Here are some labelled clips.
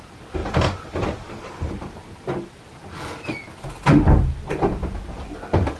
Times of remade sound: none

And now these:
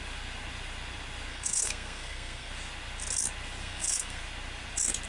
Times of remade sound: 1.3-2.5 (codec, SNAC); 3.6-4.2

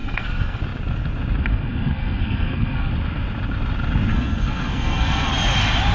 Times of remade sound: 0.0-0.6 (codec, SNAC); 1.5-2.9; 4.1-5.3

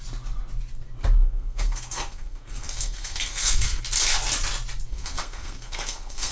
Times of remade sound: 1.2-3.8 (codec, SNAC); 4.9-6.3

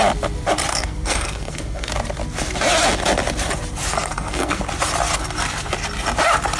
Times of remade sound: 0.7-1.9 (codec, SNAC); 3.9-4.6

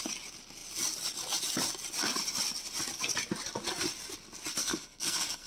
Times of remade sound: 4.6-5.5 (codec, SNAC)

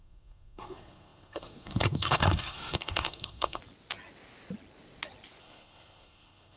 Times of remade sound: 0.0-3.6 (codec, SNAC); 5.4-6.6